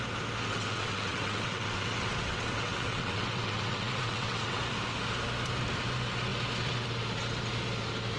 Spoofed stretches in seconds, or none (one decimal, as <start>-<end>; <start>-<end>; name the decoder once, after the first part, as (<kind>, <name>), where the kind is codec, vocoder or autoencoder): 0.5-4.6 (vocoder, WaveNeXt)